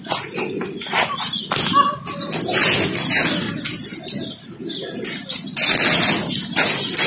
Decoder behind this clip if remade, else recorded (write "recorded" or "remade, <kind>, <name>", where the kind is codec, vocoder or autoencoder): recorded